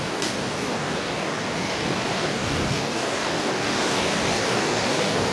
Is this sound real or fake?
fake